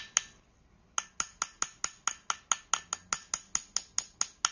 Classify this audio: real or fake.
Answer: real